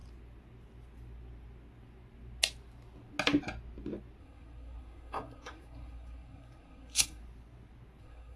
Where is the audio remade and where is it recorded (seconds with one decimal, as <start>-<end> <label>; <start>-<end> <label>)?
0.0-4.2 recorded; 4.2-7.2 remade; 7.2-8.0 recorded; 8.0-8.4 remade